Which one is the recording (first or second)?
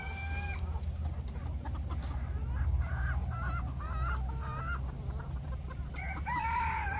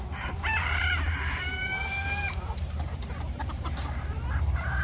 first